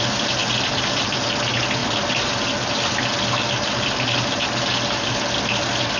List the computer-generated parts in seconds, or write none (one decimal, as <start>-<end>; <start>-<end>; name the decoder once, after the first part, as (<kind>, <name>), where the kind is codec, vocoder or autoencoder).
none